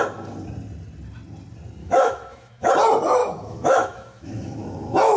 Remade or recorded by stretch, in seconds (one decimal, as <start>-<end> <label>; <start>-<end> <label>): 0.0-1.8 recorded; 1.8-2.7 remade; 2.7-3.2 recorded; 3.2-5.2 remade